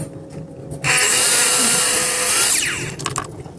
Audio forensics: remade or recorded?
recorded